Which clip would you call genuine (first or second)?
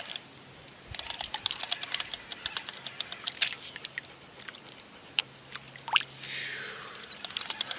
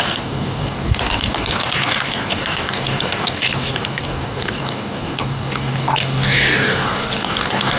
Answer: first